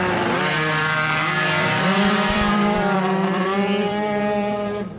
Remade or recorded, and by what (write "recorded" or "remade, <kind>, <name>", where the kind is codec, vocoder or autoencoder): remade, vocoder, BigVGAN v2